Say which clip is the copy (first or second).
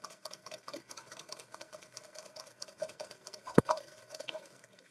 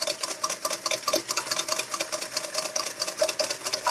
first